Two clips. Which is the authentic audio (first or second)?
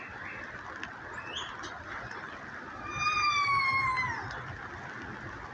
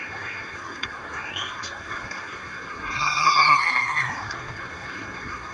first